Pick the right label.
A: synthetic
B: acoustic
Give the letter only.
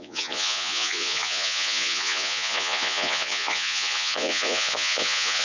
A